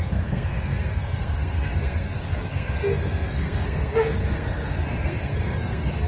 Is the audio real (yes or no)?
no